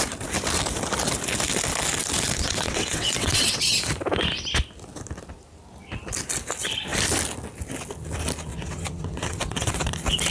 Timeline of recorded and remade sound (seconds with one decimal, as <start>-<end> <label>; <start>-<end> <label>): 0.0-2.4 recorded; 2.4-3.6 remade; 3.6-8.5 recorded; 8.5-9.8 remade; 9.8-10.3 recorded